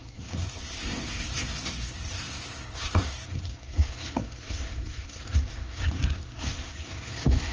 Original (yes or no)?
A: no